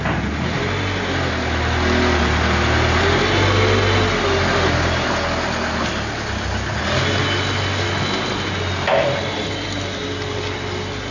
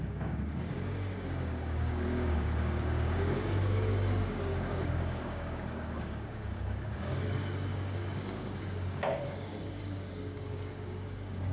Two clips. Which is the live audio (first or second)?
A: first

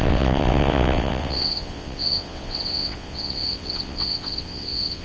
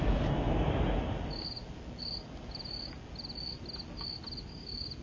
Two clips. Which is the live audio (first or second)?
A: second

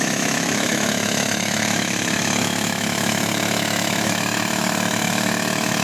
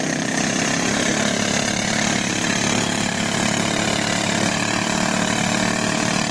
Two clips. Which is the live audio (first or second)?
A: second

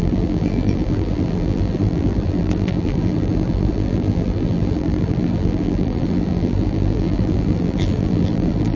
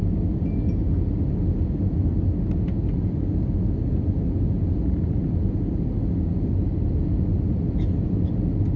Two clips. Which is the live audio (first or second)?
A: second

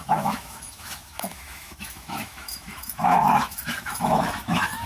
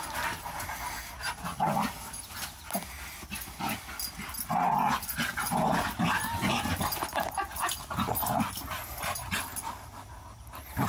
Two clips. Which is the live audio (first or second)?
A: second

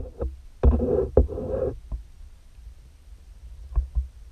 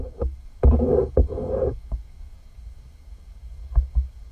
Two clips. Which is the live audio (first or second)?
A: first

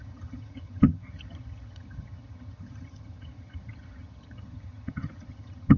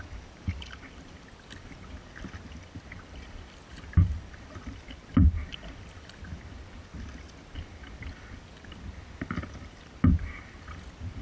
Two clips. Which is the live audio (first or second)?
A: second